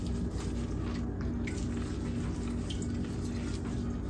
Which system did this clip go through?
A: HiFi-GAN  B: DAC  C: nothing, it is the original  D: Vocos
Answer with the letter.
C